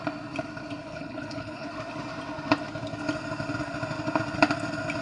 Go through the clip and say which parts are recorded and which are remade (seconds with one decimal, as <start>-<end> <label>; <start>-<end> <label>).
0.0-0.8 recorded; 0.8-1.7 remade; 1.7-5.0 recorded

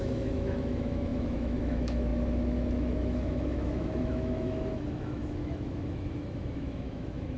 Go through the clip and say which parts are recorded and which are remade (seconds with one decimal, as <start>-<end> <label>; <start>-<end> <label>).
0.0-7.4 remade

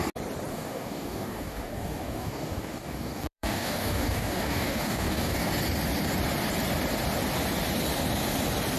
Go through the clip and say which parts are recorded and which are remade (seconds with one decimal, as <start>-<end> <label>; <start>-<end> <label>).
0.0-0.5 recorded; 0.5-5.5 remade; 5.5-8.8 recorded

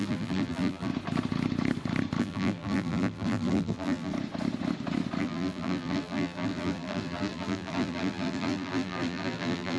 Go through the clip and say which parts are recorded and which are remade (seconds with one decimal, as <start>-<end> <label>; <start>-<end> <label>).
0.0-0.9 remade; 0.9-2.2 recorded; 2.2-4.1 remade; 4.1-5.2 recorded; 5.2-9.8 remade

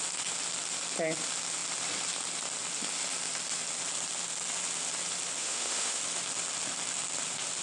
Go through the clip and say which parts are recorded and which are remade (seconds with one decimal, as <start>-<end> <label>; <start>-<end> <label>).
0.0-5.4 recorded; 5.4-6.0 remade; 6.0-7.6 recorded

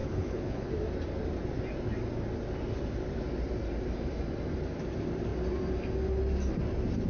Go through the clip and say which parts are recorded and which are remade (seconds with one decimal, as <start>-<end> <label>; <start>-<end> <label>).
0.0-0.7 remade; 0.7-7.1 recorded

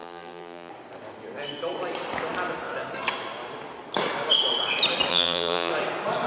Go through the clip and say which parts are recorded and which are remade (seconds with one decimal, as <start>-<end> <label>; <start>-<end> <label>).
0.0-0.7 remade; 0.7-5.1 recorded; 5.1-5.7 remade; 5.7-6.3 recorded